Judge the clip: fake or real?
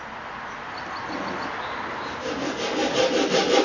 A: real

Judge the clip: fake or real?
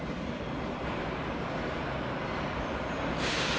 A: real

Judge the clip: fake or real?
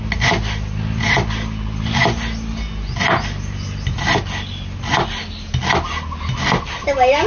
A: real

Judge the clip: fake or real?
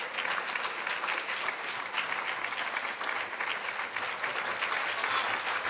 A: real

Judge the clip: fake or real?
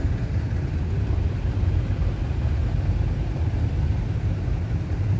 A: real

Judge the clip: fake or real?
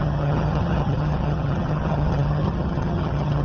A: fake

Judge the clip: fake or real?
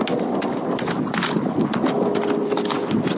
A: real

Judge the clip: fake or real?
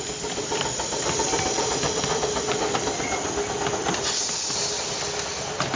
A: real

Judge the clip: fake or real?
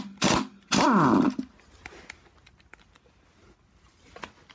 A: real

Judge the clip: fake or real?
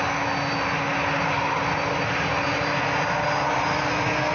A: real